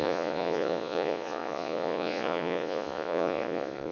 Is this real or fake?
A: fake